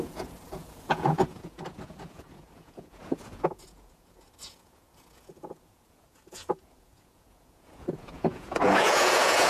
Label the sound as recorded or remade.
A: remade